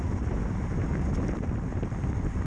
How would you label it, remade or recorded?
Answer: recorded